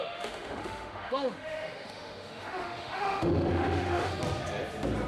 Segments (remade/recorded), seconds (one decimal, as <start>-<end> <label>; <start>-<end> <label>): 0.0-4.1 remade; 4.1-5.1 recorded